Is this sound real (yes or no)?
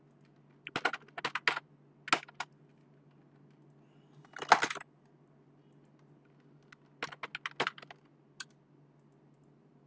yes